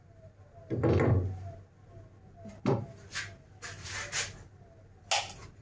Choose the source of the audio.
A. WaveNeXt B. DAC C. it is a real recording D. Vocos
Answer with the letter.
C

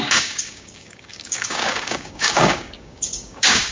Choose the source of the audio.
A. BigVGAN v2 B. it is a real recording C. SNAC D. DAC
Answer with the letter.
D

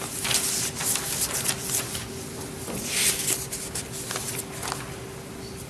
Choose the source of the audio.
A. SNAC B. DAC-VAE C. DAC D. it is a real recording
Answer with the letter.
D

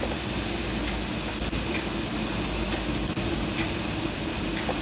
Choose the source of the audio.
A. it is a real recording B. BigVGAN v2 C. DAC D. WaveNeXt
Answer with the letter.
A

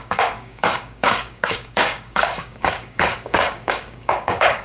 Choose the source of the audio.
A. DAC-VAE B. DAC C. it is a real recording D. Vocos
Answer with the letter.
B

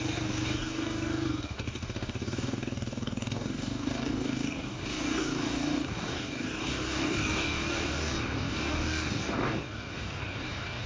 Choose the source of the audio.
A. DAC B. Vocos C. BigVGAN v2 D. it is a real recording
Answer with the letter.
A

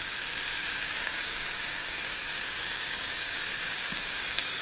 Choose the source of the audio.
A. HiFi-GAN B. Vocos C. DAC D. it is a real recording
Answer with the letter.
C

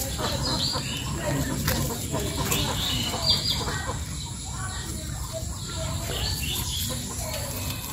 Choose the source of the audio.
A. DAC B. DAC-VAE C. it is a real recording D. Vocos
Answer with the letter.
C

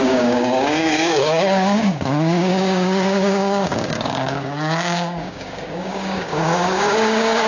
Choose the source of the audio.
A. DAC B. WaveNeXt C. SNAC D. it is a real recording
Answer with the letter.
A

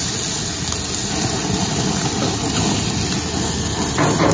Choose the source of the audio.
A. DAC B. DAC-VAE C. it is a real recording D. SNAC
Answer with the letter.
C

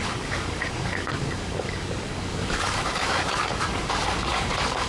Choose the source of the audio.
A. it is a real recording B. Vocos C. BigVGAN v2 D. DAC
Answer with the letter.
D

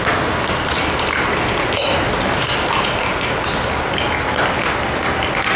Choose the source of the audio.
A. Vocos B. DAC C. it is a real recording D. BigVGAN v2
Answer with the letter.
C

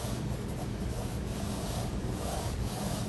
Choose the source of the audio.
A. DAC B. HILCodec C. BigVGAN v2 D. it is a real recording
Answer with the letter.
A